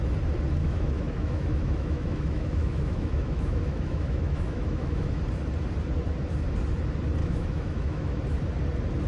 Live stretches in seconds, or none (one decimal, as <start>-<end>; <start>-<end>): 0.0-0.6; 5.2-7.2; 8.2-9.1